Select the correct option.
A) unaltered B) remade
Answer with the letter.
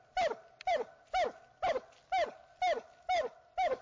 A